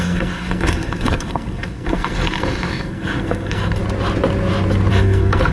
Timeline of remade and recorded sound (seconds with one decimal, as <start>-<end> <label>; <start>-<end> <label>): 0.0-3.8 remade; 3.8-4.9 recorded; 4.9-5.5 remade